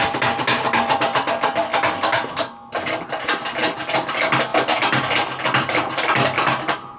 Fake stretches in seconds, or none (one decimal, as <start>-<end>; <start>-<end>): none